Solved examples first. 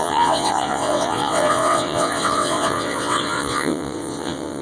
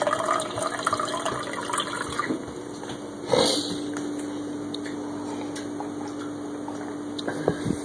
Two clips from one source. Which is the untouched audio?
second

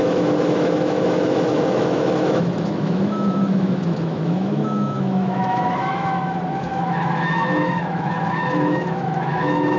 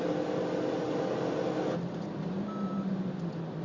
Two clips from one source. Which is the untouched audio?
second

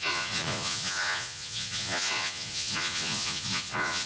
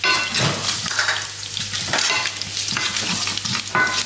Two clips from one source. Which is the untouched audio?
second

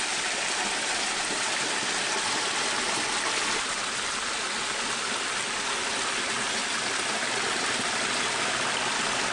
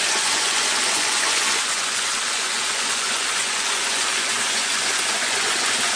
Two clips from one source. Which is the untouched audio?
first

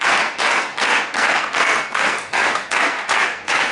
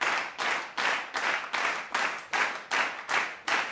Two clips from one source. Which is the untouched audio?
second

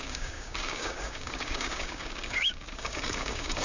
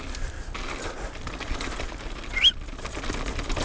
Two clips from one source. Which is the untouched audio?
second